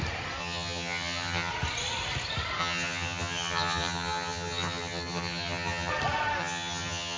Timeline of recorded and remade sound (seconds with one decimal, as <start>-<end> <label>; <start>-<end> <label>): 0.0-0.4 recorded; 0.4-1.5 remade; 1.5-2.6 recorded; 2.6-5.9 remade; 5.9-6.4 recorded; 6.4-7.2 remade

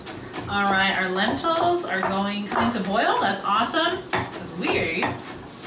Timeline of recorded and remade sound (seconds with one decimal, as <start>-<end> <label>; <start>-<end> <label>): 0.0-5.7 recorded

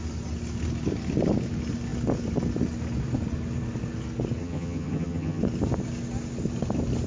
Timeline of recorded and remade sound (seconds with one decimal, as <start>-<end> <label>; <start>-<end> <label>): 0.0-4.4 recorded; 4.4-5.4 remade; 5.4-7.1 recorded

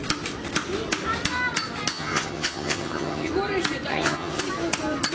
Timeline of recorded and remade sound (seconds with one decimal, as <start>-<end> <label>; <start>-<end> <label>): 0.0-1.9 recorded; 1.9-3.3 remade; 3.3-3.9 recorded; 3.9-4.4 remade; 4.4-5.1 recorded

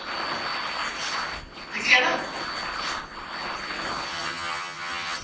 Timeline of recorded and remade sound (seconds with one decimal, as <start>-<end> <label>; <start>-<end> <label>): 0.0-4.1 recorded; 4.1-5.2 remade

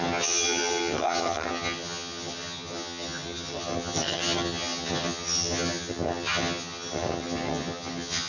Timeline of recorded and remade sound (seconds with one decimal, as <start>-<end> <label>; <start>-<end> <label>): 0.0-8.3 remade

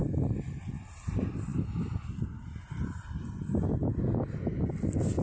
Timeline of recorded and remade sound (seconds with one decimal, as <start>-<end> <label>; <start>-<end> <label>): 0.0-5.2 recorded

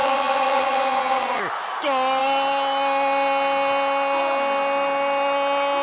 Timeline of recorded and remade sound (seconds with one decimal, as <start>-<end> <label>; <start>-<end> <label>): 0.0-1.4 remade; 1.4-5.8 recorded